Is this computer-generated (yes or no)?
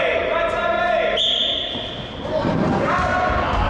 no